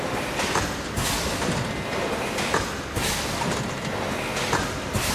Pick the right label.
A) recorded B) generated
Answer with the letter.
A